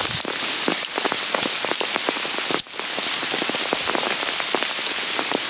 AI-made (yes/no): no